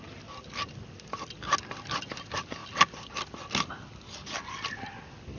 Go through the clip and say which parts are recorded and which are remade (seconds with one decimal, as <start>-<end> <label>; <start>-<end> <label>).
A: 0.0-5.4 recorded